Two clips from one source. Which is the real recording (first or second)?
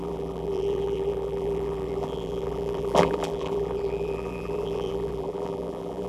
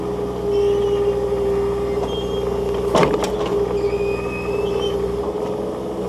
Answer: second